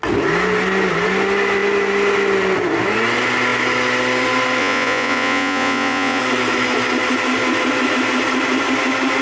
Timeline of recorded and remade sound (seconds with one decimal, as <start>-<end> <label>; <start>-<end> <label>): 0.0-4.6 recorded; 4.6-6.2 remade; 6.2-9.2 recorded